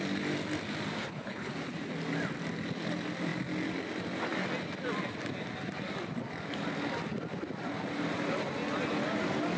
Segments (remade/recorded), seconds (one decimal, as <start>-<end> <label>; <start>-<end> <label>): 0.0-1.0 recorded; 1.0-1.5 remade; 1.5-9.6 recorded